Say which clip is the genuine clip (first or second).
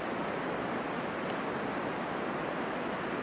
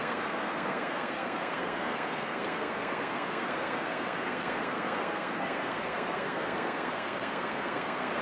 first